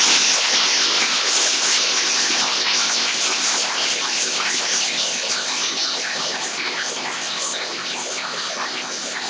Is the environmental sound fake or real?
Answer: fake